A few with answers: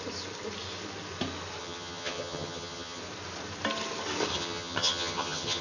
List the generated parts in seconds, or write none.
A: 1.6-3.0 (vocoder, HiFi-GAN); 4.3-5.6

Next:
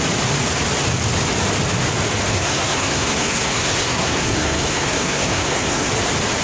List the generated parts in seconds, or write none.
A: 2.3-5.9 (codec, SNAC)